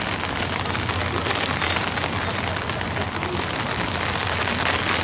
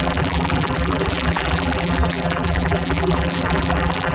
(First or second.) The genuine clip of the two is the first